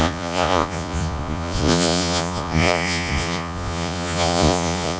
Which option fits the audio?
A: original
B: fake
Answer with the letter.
B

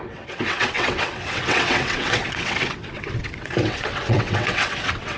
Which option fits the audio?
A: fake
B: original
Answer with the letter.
A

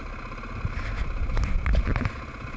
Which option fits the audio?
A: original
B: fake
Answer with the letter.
A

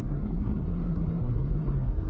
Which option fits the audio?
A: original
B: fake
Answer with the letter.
B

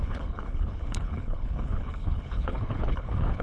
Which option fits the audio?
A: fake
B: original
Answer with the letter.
A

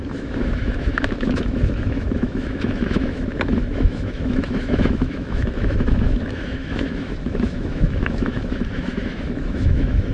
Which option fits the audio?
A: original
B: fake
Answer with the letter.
B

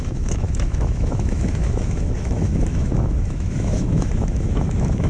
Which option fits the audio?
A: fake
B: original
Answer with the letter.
A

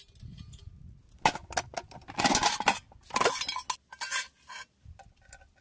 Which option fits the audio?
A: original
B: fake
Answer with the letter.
A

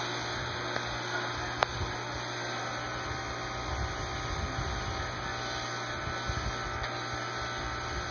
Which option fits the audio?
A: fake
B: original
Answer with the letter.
B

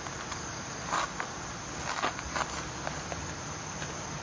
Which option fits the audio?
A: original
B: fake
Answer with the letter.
A